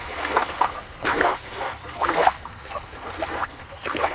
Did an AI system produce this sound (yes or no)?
yes